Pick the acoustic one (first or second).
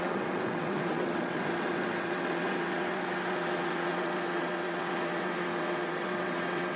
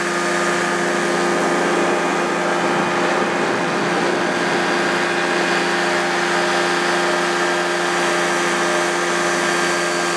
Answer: second